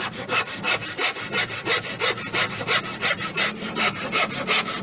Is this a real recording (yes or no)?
yes